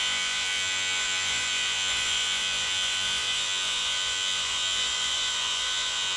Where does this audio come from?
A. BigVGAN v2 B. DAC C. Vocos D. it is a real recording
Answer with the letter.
C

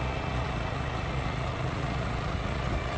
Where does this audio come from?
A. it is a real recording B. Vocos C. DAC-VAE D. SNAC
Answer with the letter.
B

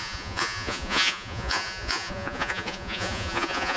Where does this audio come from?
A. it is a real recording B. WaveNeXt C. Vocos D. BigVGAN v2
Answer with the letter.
C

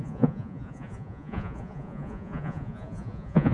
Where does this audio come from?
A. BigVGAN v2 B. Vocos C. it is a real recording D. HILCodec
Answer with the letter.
B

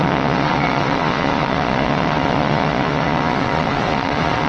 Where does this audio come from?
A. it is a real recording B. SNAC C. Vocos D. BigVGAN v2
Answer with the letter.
C